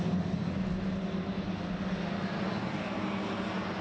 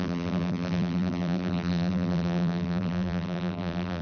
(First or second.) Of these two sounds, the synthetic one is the second